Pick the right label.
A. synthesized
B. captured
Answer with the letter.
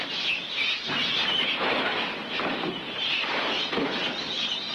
B